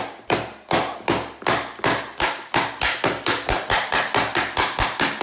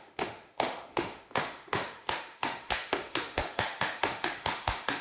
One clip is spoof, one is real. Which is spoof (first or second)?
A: second